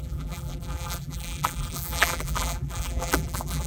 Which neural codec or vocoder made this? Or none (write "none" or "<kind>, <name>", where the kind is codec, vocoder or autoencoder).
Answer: vocoder, BigVGAN v2